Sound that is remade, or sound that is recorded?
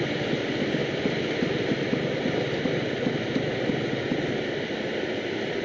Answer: recorded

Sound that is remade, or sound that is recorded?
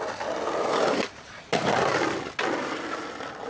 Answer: recorded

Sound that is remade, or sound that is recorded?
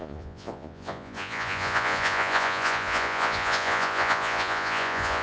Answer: remade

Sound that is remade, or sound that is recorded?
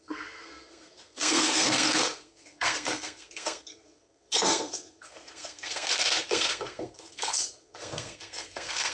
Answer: remade